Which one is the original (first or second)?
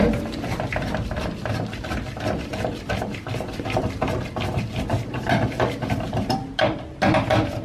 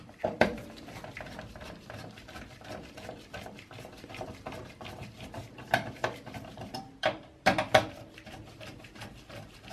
first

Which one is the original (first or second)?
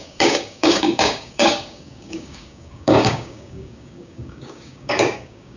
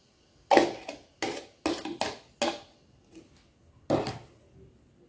second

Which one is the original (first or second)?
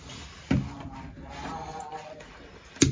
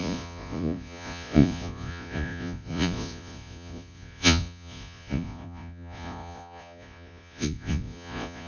first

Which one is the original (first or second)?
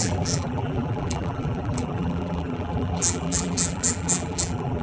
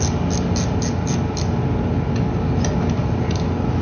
second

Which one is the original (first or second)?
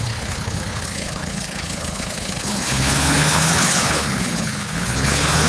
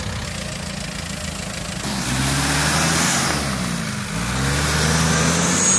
second